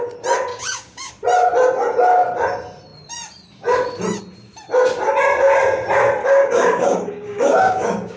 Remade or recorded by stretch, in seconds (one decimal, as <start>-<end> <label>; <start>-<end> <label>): 0.0-0.5 recorded; 0.5-1.1 remade; 1.1-6.2 recorded; 6.2-8.2 remade